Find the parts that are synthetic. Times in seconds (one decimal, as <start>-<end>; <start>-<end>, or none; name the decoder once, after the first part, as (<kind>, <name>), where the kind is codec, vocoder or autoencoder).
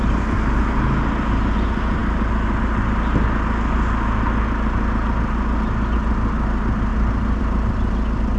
none